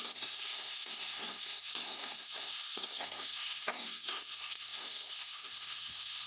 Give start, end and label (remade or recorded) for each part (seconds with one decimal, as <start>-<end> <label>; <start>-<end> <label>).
0.0-6.3 remade